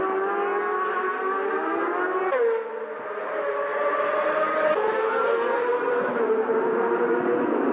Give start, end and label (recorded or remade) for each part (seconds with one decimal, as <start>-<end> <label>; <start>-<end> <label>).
0.0-3.7 recorded; 3.7-7.7 remade